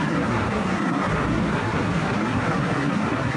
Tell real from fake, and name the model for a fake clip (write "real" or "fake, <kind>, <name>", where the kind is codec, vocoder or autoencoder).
fake, codec, SNAC